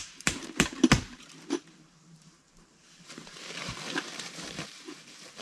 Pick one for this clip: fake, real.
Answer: fake